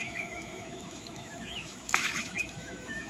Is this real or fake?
fake